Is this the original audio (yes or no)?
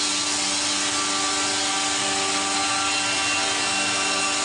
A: yes